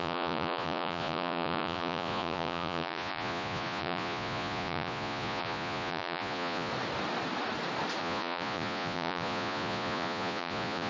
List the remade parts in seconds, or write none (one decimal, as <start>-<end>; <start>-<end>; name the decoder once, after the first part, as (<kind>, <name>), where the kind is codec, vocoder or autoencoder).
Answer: 0.0-6.7 (vocoder, Vocos); 8.0-10.9